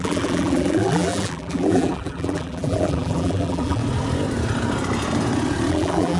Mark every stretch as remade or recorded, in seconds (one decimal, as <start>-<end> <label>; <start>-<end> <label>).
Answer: 0.0-3.8 remade; 3.8-5.7 recorded; 5.7-6.2 remade